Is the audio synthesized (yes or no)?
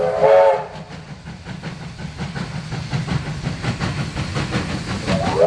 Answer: no